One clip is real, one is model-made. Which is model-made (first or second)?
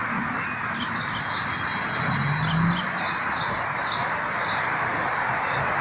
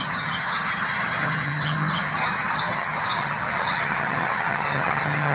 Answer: second